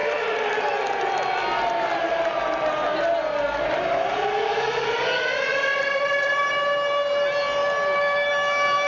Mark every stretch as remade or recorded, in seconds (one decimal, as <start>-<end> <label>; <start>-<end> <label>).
0.0-5.5 recorded; 5.5-6.5 remade; 6.5-8.9 recorded